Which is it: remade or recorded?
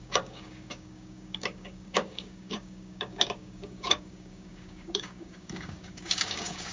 remade